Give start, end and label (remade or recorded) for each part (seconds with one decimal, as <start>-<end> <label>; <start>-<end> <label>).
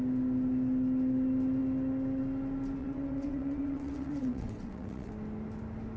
0.0-2.8 recorded; 2.8-5.1 remade; 5.1-6.0 recorded